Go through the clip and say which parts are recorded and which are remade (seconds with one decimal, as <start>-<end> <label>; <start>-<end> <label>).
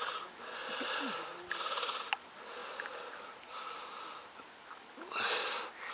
0.0-5.9 recorded